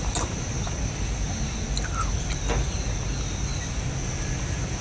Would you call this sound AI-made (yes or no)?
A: no